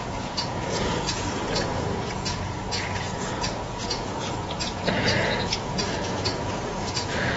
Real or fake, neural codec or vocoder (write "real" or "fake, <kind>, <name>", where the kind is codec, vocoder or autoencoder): fake, vocoder, Vocos